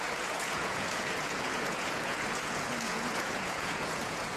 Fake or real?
fake